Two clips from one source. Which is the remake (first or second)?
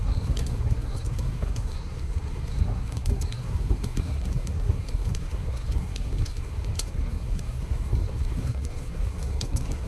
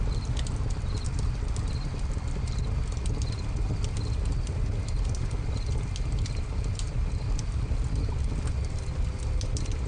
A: first